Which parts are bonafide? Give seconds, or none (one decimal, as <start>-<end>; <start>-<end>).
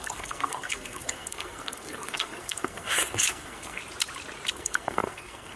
3.8-4.5